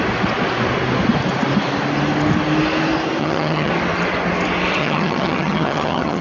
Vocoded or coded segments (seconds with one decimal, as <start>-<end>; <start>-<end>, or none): 3.2-3.7; 4.8-6.2